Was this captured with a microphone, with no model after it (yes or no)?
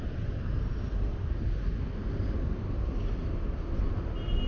yes